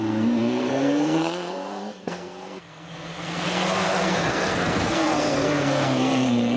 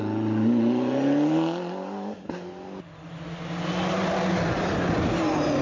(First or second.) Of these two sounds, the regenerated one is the first